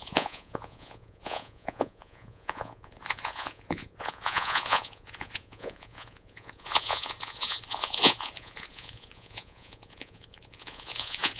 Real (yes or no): no